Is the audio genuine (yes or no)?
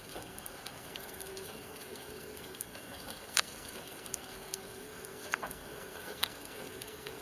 no